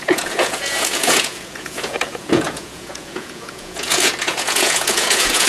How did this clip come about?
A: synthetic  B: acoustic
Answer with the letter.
A